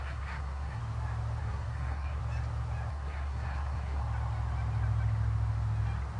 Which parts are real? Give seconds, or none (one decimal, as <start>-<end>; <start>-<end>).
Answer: 0.8-1.4; 2.2-2.9; 4.0-6.2

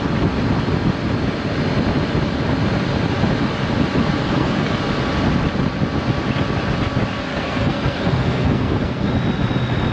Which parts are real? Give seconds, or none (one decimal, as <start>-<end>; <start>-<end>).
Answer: 0.0-4.2; 4.8-7.3; 9.1-9.9

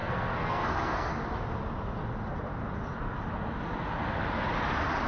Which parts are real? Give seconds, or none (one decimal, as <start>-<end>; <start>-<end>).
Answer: 1.1-5.1

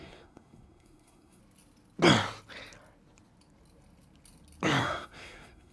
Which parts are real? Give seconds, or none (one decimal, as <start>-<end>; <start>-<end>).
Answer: 1.4-4.8

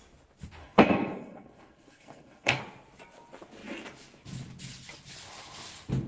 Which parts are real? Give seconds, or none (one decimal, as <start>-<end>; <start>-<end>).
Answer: 0.0-0.6; 2.6-6.1